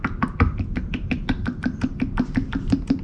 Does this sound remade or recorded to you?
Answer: recorded